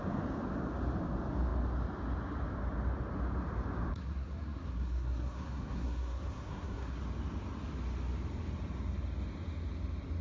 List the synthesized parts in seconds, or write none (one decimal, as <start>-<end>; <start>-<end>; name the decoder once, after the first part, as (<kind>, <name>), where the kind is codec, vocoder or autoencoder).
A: 3.9-7.0 (codec, SNAC)

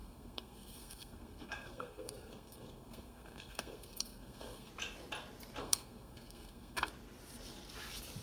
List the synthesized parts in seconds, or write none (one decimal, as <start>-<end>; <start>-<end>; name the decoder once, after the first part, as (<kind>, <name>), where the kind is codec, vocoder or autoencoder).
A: 0.0-4.7 (codec, SNAC); 5.6-6.9

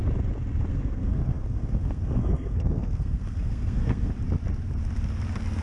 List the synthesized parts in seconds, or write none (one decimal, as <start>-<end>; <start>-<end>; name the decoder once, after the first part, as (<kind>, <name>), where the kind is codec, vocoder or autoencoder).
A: 0.7-4.1 (codec, SNAC)

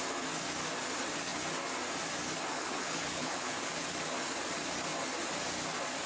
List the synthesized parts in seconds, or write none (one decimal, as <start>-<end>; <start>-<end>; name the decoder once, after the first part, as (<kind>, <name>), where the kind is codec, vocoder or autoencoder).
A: 2.5-3.7 (codec, HILCodec)

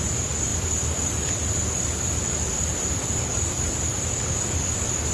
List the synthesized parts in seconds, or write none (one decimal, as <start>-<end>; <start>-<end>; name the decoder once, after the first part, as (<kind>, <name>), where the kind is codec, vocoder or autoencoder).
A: none

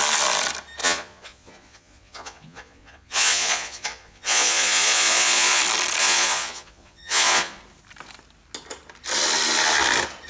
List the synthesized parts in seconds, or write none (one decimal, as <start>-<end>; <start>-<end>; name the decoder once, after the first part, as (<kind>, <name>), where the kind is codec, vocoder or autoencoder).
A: 0.8-5.6 (vocoder, Vocos); 6.0-7.6

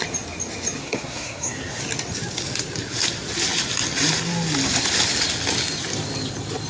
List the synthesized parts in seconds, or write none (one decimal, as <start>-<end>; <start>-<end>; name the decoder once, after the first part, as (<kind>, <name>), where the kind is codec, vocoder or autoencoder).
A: 0.8-1.8 (codec, SNAC)

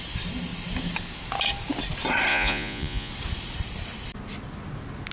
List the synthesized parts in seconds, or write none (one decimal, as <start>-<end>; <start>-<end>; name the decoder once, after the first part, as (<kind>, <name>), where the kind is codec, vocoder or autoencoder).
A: 2.3-3.1 (vocoder, Vocos)